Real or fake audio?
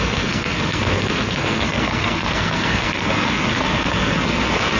fake